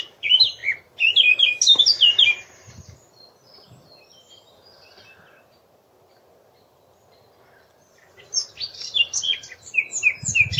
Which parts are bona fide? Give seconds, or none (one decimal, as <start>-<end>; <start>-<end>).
0.0-10.6